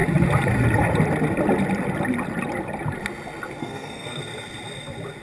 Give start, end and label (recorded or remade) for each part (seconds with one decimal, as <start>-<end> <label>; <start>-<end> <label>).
0.0-3.6 recorded; 3.6-4.2 remade; 4.2-5.2 recorded